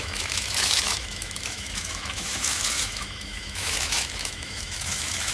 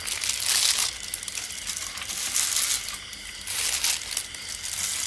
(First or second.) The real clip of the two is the second